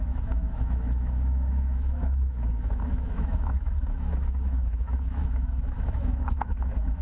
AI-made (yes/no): yes